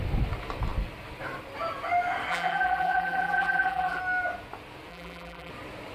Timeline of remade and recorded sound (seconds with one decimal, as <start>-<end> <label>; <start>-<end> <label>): 0.0-2.3 recorded; 2.3-4.0 remade; 4.0-4.9 recorded; 4.9-5.5 remade; 5.5-5.9 recorded